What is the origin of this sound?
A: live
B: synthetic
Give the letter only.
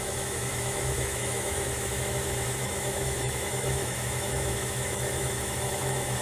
B